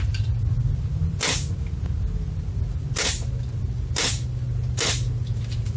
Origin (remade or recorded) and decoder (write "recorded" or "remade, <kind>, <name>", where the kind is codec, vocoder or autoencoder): recorded